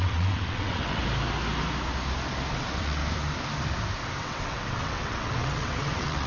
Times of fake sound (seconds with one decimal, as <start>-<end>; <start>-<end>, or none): 0.0-1.0; 2.5-3.0; 4.2-6.3